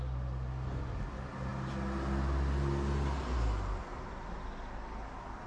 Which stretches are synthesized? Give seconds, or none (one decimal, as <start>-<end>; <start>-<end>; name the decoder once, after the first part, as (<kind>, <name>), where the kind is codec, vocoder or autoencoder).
none